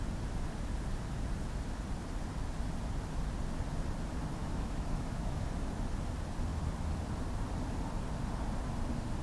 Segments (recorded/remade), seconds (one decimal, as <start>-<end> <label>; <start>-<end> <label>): 0.0-4.4 recorded; 4.4-5.5 remade; 5.5-9.2 recorded